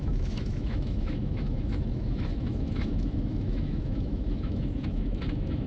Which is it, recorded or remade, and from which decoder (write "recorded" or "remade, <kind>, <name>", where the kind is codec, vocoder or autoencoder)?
remade, autoencoder, DAC-VAE